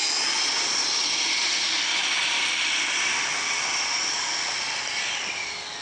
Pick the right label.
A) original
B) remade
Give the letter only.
A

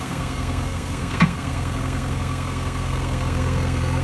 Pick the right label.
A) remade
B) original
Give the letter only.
A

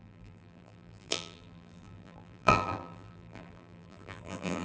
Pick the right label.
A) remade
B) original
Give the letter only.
A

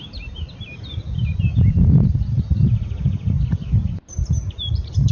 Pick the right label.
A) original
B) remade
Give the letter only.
A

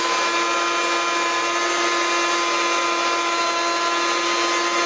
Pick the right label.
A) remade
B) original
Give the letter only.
B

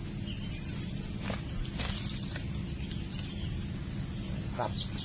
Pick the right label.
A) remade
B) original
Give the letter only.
B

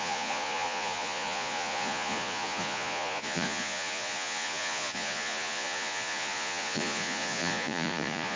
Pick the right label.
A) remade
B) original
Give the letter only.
A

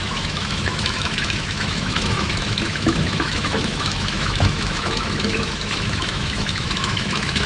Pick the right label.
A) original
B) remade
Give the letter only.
B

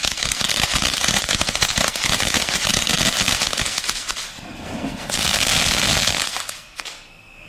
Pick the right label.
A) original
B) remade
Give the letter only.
B